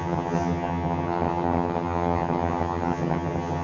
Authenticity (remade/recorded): remade